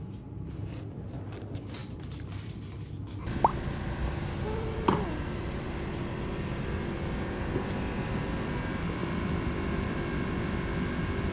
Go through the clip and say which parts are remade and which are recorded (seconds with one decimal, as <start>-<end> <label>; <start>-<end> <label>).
0.0-1.8 recorded; 1.8-2.6 remade; 2.6-3.5 recorded; 3.5-7.5 remade; 7.5-9.0 recorded; 9.0-10.0 remade; 10.0-11.3 recorded